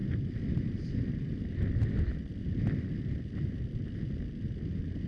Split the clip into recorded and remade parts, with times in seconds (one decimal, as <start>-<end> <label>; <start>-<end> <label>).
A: 0.0-5.1 recorded